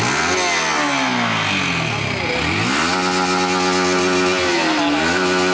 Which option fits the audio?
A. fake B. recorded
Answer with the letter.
B